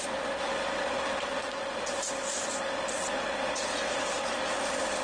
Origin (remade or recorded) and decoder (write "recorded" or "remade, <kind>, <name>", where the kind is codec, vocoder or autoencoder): recorded